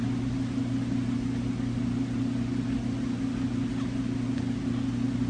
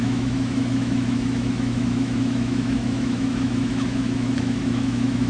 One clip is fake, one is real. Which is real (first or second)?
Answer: first